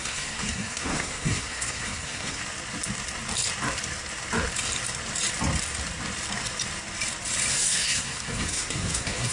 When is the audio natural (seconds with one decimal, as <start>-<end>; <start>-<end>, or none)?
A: 2.4-7.5

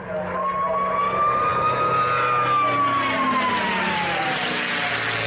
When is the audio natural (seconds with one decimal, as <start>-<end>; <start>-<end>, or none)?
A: 0.0-5.3

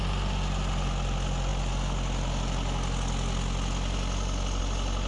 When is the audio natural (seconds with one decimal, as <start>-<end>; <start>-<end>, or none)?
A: 0.0-5.1

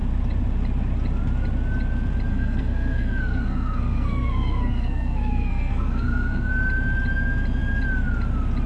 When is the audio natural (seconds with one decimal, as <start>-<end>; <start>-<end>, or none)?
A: 0.0-2.3; 6.5-8.7

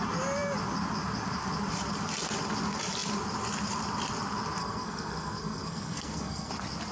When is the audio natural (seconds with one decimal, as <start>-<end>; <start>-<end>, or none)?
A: 0.0-4.6; 6.5-6.9

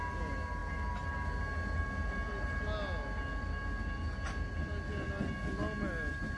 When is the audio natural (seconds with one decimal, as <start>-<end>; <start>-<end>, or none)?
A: 0.0-6.4

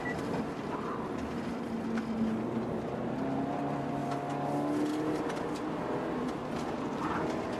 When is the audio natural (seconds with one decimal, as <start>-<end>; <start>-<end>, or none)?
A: 0.0-7.6

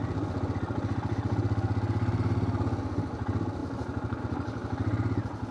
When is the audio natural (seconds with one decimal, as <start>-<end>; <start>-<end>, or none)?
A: 0.0-5.5